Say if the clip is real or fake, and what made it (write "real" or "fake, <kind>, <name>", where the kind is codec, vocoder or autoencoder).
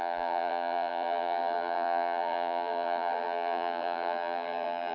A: fake, vocoder, BigVGAN v2